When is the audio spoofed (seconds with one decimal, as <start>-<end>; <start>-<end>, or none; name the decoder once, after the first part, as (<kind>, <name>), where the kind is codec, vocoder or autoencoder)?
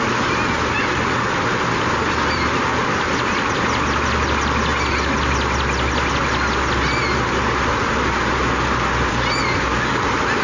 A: none